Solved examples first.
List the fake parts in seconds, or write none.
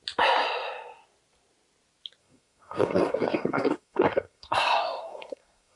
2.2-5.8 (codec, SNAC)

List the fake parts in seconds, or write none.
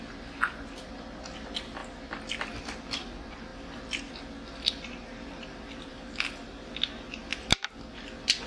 none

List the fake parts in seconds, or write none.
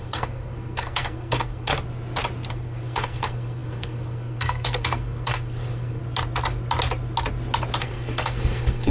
0.0-1.7 (codec, SNAC); 2.5-6.0; 7.8-8.9